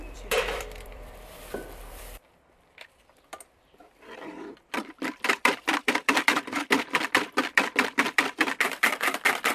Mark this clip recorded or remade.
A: remade